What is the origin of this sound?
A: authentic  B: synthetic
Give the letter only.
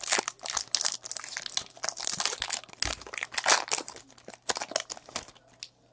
A